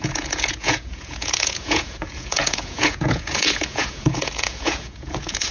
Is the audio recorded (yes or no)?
no